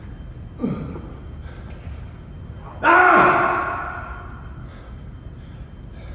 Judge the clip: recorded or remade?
recorded